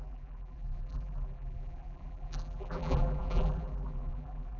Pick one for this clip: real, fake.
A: fake